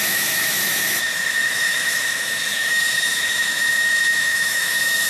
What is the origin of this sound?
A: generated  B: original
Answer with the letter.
A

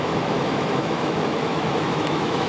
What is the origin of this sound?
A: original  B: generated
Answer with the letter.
B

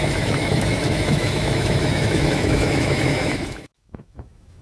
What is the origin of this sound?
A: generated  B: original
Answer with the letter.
A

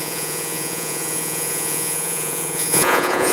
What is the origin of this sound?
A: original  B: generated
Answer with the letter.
B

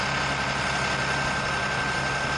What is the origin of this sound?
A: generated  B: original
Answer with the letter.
B